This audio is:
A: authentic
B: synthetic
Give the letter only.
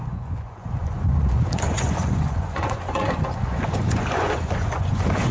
B